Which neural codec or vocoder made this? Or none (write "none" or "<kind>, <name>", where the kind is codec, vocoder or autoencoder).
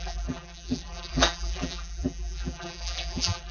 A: vocoder, BigVGAN v2